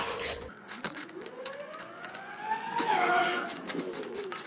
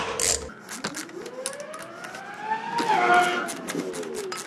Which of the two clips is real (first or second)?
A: second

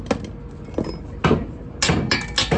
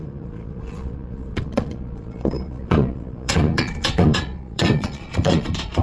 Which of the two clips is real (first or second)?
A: first